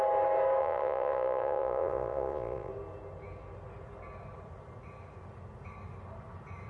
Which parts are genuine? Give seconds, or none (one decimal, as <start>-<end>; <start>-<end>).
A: 0.0-0.6; 2.7-6.7